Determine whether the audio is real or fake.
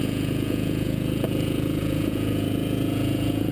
fake